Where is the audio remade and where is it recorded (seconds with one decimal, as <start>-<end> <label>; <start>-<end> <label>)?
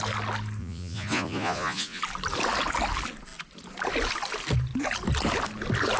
0.0-0.6 recorded; 0.6-2.0 remade; 2.0-6.0 recorded